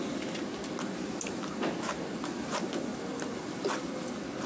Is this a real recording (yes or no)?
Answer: yes